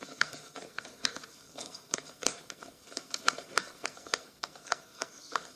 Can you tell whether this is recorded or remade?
remade